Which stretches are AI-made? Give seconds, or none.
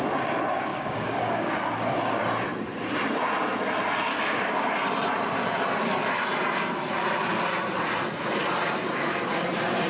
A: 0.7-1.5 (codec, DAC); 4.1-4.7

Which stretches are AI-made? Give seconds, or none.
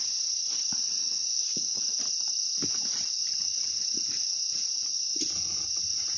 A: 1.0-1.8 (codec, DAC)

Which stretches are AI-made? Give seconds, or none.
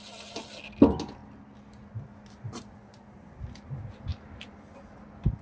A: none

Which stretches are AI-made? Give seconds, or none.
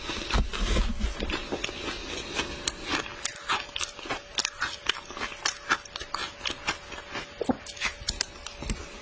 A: none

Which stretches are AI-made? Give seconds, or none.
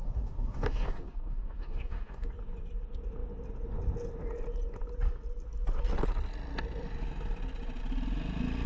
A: 0.0-2.3 (codec, DAC)